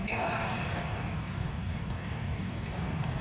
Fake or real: fake